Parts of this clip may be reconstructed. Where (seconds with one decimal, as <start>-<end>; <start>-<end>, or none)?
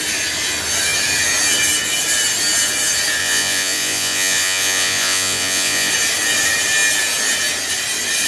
3.2-5.9